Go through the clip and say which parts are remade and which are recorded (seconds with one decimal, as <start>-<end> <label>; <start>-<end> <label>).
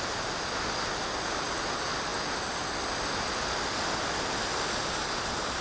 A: 0.0-5.6 recorded